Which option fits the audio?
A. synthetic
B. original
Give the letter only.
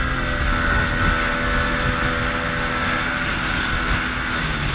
B